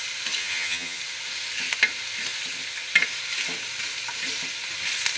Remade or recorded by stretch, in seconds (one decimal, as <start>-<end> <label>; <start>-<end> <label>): 0.0-0.4 recorded; 0.4-1.0 remade; 1.0-5.2 recorded